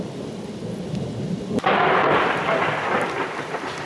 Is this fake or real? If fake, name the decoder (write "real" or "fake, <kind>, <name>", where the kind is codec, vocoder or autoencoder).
fake, vocoder, BigVGAN v2